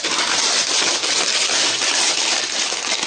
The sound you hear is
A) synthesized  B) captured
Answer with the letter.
A